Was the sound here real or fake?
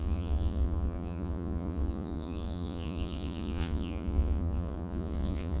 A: fake